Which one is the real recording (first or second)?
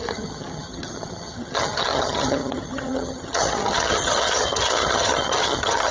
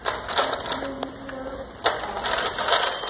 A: second